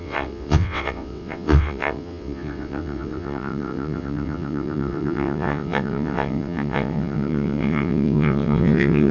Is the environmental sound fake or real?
fake